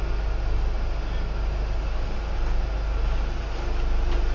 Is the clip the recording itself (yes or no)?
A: yes